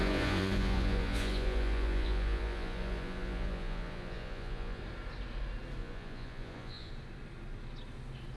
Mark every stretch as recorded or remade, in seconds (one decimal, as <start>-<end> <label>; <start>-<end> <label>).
0.0-4.8 remade; 4.8-5.8 recorded; 5.8-6.9 remade; 6.9-8.4 recorded